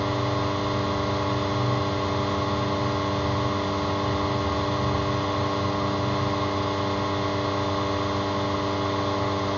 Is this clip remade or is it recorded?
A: recorded